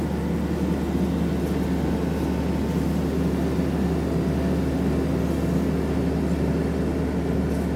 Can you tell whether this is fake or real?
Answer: real